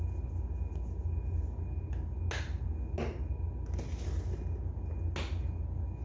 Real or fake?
real